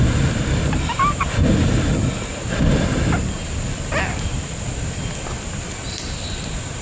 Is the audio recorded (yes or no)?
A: yes